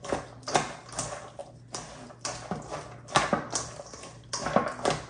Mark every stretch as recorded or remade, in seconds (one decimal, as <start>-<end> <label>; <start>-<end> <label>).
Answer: 0.0-5.1 recorded